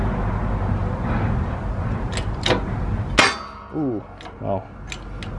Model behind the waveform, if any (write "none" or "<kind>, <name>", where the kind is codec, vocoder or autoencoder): none